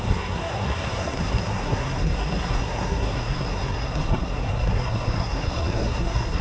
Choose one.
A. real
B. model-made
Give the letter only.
B